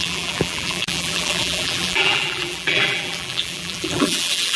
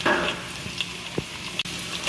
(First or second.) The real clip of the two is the second